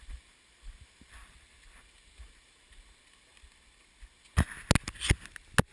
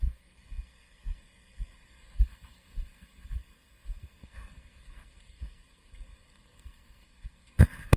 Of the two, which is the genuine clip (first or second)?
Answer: first